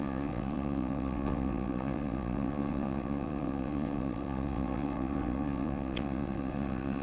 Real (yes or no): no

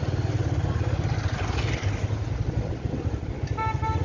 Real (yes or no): yes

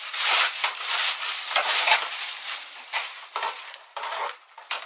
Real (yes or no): yes